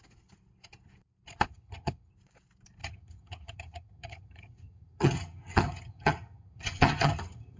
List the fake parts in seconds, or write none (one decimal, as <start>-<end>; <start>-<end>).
1.5-2.1; 2.8-7.6